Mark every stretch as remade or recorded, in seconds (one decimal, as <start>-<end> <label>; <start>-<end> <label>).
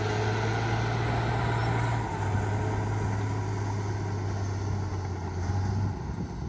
0.0-6.5 recorded